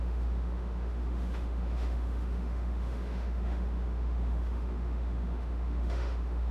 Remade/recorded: remade